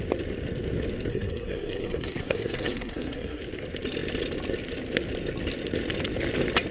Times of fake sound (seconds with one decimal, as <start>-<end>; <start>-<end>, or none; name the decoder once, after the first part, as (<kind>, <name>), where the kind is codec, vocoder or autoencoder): 1.1-3.4 (codec, SNAC)